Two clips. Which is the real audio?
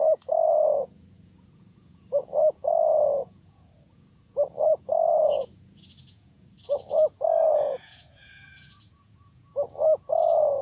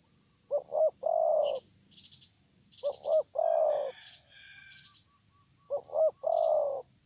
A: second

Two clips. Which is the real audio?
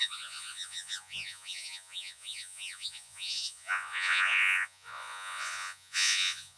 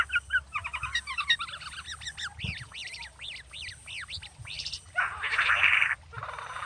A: second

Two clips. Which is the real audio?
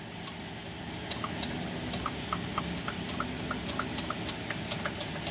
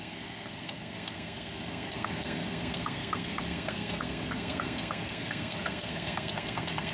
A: first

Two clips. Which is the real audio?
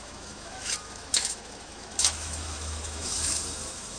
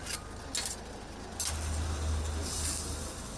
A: second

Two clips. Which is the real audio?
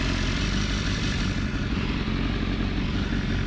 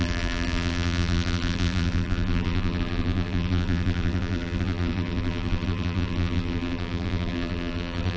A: first